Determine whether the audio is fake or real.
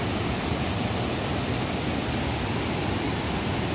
real